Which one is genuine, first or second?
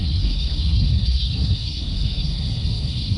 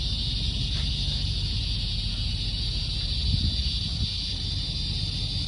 second